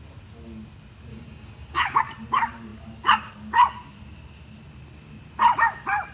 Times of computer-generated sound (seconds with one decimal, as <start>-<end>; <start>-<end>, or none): 1.1-2.0

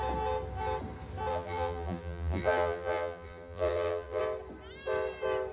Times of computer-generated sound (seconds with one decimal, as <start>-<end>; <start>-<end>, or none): 1.3-4.2

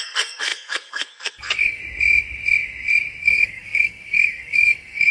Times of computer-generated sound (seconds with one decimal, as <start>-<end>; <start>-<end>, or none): 0.0-1.8; 3.2-5.1

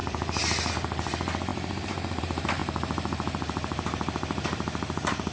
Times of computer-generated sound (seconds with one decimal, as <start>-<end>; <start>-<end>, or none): 0.0-5.3

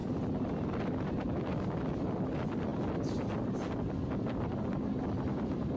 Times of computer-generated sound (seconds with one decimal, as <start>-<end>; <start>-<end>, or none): none

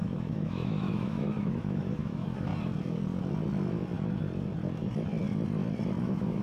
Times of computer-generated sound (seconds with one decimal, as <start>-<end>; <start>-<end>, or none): 0.0-2.5; 6.0-6.4

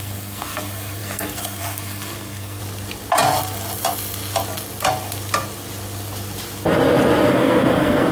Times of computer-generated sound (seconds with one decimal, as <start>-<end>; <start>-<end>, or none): 0.0-2.6; 7.3-8.1